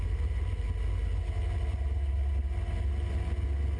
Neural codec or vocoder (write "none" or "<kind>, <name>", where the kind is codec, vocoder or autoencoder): none